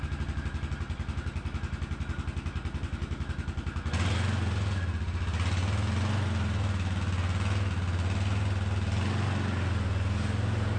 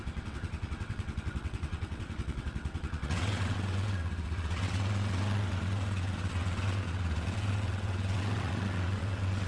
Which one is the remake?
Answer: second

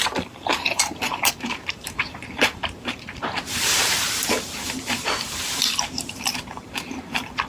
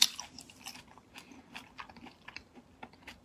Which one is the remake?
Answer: first